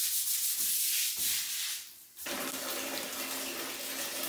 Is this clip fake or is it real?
real